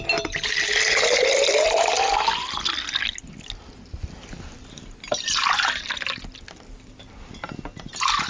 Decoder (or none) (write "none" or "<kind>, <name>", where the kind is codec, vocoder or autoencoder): none